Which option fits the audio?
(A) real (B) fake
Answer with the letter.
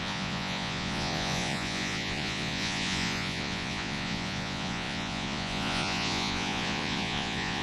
B